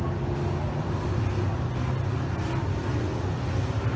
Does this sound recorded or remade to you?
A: recorded